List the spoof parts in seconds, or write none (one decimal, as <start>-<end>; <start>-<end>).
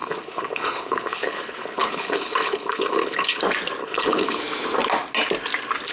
0.0-3.4; 3.8-4.4